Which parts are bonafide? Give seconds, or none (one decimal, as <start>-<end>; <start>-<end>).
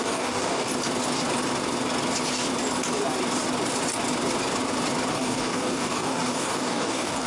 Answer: 0.7-5.1